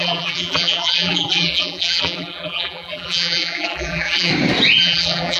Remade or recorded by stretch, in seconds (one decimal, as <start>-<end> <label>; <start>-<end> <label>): 0.0-4.3 remade; 4.3-4.8 recorded; 4.8-5.4 remade